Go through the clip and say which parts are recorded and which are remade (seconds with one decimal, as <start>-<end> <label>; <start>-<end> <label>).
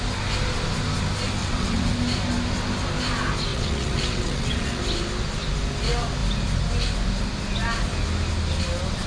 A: 0.0-1.4 recorded; 1.4-1.9 remade; 1.9-3.5 recorded; 3.5-4.8 remade; 4.8-9.1 recorded